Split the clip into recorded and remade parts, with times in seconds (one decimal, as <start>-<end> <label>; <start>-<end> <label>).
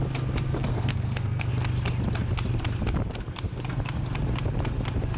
0.0-0.7 recorded; 0.7-1.5 remade; 1.5-5.2 recorded